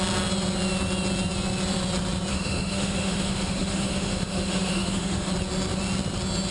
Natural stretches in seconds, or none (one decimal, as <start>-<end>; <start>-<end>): 0.0-2.3; 5.3-6.5